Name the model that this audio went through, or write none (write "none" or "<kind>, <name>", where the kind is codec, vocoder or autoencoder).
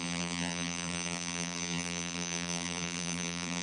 vocoder, BigVGAN v2